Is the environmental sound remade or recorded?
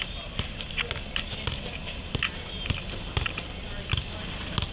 recorded